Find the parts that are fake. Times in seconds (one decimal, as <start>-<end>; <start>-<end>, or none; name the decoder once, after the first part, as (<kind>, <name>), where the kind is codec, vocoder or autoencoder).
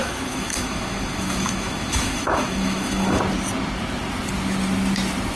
0.0-3.2 (autoencoder, DAC-VAE)